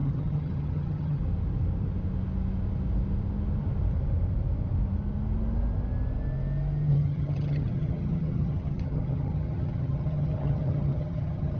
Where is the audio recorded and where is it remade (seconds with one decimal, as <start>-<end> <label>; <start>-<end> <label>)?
0.0-1.2 remade; 1.2-6.9 recorded; 6.9-11.6 remade